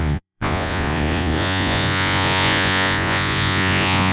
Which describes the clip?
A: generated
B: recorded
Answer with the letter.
A